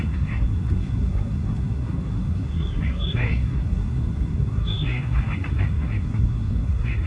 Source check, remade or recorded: remade